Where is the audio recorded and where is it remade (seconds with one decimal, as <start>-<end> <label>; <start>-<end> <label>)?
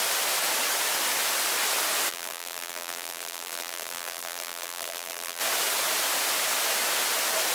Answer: 0.0-2.1 recorded; 2.1-5.4 remade; 5.4-7.5 recorded